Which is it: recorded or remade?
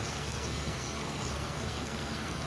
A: remade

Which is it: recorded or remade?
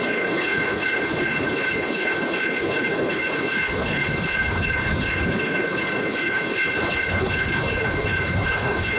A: remade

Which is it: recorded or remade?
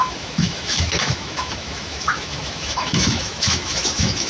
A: remade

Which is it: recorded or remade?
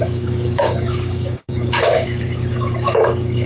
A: remade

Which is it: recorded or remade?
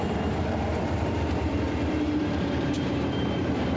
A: remade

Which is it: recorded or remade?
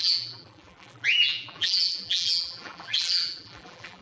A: remade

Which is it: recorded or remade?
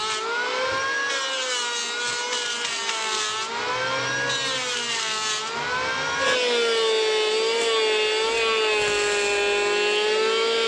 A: recorded